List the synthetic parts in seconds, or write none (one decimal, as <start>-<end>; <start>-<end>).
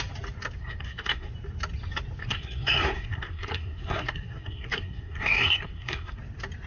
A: 0.6-1.3; 2.2-6.2